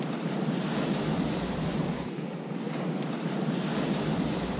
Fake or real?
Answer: real